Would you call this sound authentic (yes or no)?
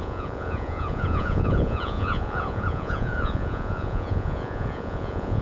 no